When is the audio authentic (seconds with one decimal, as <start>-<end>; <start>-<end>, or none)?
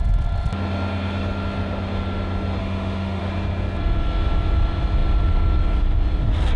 0.0-2.6; 3.2-6.6